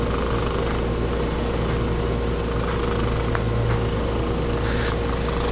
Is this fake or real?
real